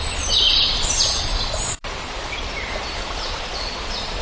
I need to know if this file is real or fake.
fake